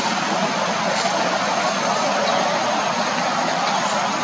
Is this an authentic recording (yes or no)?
yes